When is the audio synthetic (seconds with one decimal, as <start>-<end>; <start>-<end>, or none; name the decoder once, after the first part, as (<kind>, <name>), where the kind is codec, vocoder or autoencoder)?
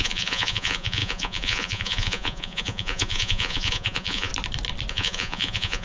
0.0-4.3 (vocoder, Vocos); 4.9-5.8